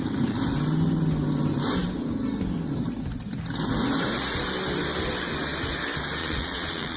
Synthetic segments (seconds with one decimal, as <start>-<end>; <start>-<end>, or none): 6.2-7.0